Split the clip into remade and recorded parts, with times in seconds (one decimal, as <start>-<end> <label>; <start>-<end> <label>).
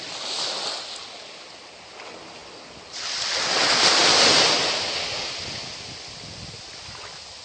0.0-7.4 recorded